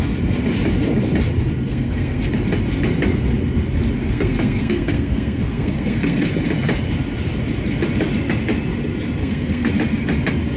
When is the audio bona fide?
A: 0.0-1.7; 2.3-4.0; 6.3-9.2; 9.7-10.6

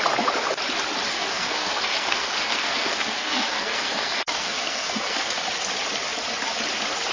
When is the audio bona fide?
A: 0.0-1.1; 5.4-7.1

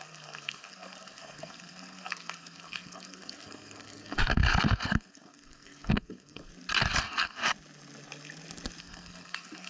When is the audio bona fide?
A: 6.5-7.0; 7.4-8.8

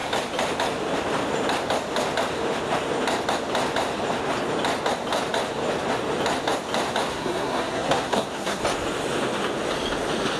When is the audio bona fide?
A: 0.0-7.1; 8.6-10.4

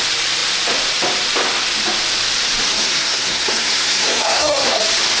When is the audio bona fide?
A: 0.0-2.7; 4.8-5.2